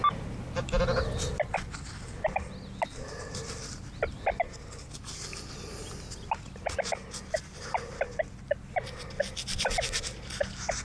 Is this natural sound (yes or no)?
yes